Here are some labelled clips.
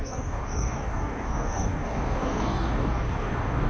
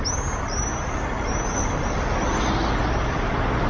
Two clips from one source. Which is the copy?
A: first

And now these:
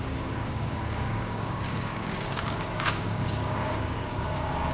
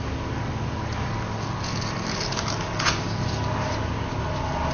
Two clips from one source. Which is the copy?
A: first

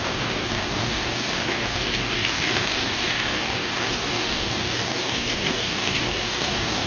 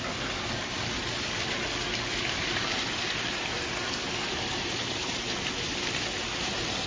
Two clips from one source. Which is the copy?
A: first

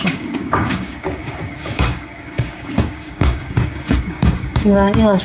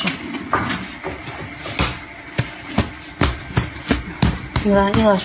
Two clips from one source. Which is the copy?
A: first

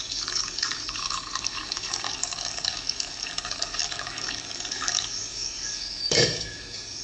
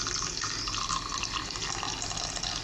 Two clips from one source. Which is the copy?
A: first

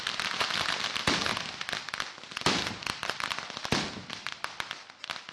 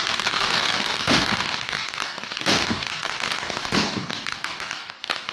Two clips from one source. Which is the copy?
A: second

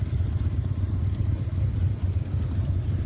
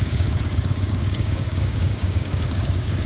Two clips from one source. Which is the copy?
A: second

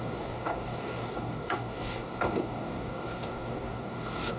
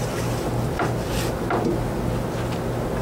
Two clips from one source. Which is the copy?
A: first